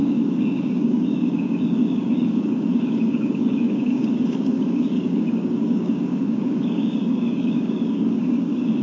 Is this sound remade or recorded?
remade